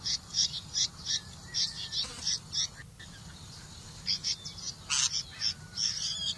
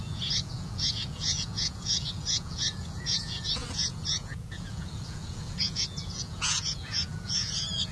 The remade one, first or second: second